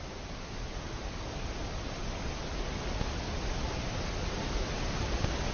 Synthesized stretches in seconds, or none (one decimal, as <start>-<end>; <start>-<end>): none